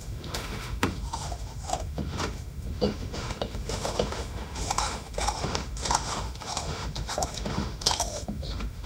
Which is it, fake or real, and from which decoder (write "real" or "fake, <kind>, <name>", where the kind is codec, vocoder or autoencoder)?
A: fake, autoencoder, DAC-VAE